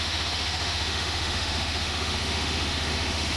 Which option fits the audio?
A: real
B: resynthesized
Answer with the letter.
B